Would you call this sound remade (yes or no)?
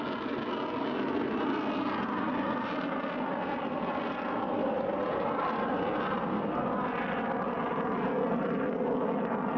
no